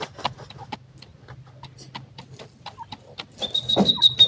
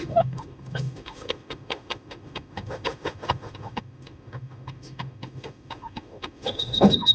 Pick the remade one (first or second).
second